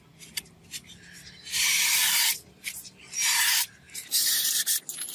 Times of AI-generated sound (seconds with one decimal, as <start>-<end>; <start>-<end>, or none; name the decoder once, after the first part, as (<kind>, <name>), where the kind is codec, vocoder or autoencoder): 1.7-5.1 (vocoder, BigVGAN v2)